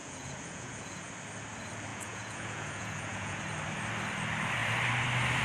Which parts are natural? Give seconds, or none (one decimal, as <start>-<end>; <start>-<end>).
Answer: 1.1-1.9; 3.4-5.4